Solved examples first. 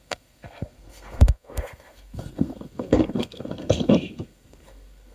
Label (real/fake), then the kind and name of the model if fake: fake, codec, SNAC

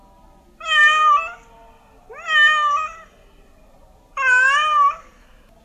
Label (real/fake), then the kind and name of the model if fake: real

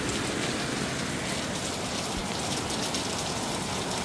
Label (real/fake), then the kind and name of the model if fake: real